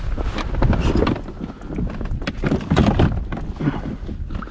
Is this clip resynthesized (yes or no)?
no